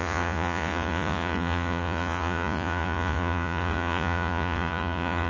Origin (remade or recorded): remade